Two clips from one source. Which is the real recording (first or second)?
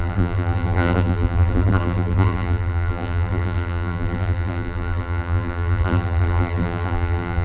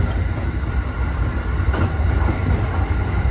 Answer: second